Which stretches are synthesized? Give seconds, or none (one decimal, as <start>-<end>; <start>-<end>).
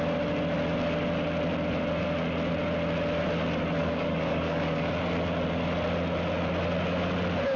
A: 3.8-4.9